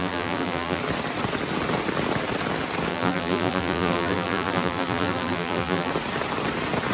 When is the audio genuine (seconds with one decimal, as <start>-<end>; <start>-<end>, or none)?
0.8-2.9; 5.9-6.9